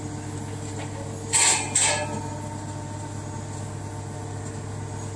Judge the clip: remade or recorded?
recorded